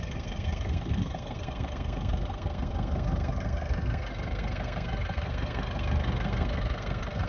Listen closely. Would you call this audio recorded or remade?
remade